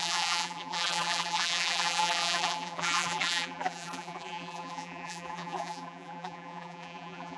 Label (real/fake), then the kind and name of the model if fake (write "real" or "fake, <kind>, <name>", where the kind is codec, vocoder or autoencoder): fake, vocoder, BigVGAN v2